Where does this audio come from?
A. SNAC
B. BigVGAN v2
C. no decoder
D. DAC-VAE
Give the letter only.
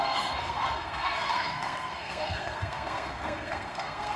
A